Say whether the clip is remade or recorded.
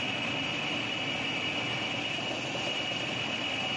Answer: recorded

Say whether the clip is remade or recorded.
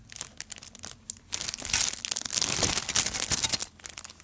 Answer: recorded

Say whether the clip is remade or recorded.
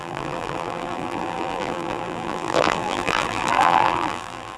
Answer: remade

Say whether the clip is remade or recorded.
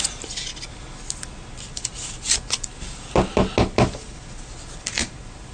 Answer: recorded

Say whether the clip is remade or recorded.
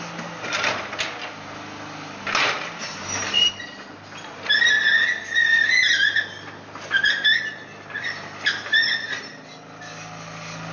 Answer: recorded